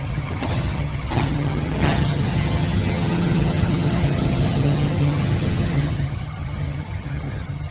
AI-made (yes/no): yes